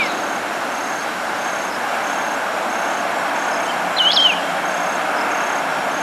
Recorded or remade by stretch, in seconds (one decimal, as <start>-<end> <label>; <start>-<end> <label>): 0.0-1.0 recorded; 1.0-1.5 remade; 1.5-6.0 recorded